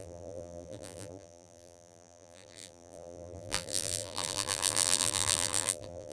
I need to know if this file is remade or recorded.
remade